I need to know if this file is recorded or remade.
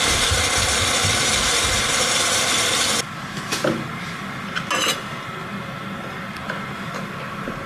recorded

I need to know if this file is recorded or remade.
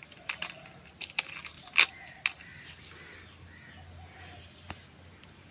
recorded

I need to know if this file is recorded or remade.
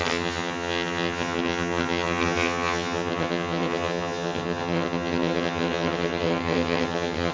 remade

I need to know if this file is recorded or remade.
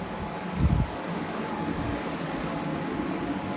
remade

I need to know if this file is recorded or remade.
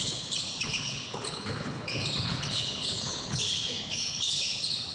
remade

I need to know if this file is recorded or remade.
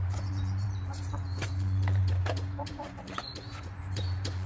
remade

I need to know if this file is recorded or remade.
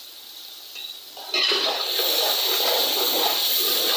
recorded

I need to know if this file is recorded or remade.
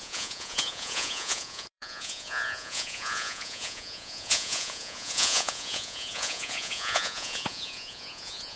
remade